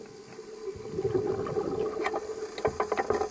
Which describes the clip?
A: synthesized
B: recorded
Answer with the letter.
B